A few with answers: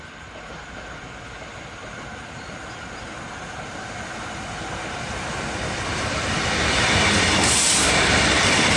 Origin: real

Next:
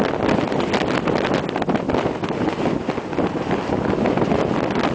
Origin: real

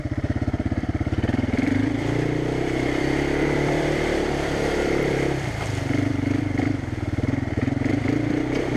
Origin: fake